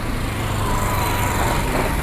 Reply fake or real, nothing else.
real